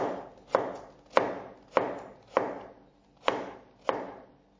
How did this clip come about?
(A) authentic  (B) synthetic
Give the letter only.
A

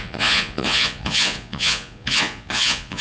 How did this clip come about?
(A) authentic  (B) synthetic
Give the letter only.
B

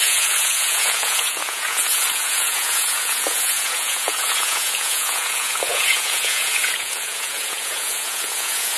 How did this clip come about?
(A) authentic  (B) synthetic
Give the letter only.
B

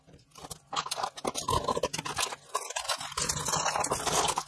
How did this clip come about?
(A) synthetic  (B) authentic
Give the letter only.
B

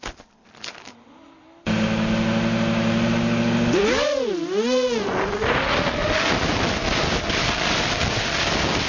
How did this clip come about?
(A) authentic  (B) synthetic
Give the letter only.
A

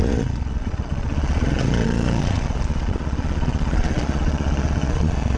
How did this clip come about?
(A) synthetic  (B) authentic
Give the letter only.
A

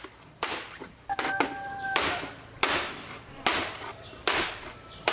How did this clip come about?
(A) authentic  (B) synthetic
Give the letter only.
A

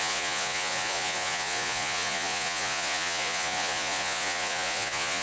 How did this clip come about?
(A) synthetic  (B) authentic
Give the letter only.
A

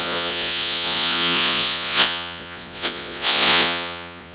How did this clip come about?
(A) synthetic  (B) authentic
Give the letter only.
A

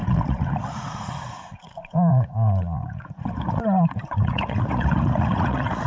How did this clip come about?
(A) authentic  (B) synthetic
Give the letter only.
B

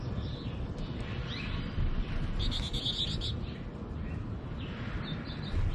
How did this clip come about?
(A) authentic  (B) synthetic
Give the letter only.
A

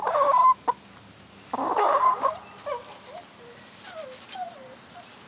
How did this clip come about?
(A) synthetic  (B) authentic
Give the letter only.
B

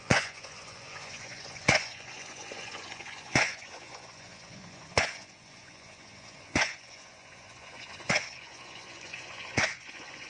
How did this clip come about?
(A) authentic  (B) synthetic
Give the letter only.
B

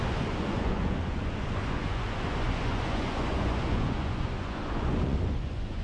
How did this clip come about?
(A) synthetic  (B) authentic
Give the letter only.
A